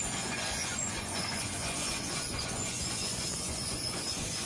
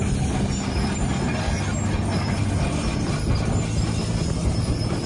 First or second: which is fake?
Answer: first